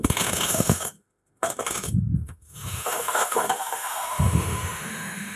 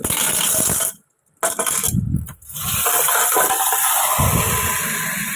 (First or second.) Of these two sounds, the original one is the second